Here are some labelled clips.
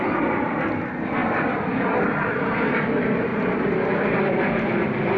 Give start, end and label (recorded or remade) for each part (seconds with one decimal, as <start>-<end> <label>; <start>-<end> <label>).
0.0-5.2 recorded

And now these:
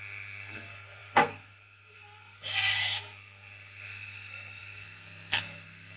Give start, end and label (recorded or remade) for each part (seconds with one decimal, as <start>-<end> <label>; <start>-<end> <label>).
0.0-6.0 remade

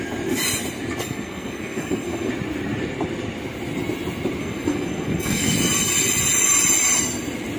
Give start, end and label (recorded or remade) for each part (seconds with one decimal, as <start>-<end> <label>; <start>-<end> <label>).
0.0-1.0 recorded; 1.0-2.3 remade; 2.3-4.4 recorded; 4.4-5.5 remade; 5.5-7.6 recorded

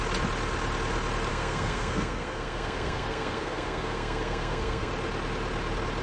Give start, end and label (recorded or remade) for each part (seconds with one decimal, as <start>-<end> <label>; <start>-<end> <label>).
0.0-1.3 recorded; 1.3-4.9 remade; 4.9-6.0 recorded

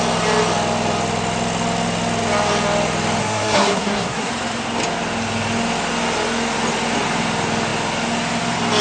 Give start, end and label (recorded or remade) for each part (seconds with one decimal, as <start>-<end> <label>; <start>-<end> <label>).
0.0-3.2 recorded; 3.2-4.3 remade; 4.3-8.8 recorded